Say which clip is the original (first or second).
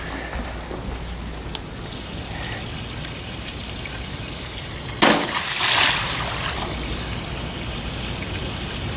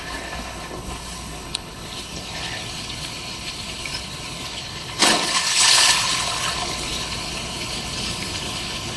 first